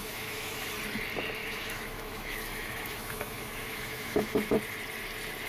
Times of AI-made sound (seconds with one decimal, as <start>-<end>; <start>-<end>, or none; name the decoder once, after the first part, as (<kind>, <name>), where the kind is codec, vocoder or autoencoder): 0.0-0.7 (autoencoder, DAC-VAE); 1.4-4.5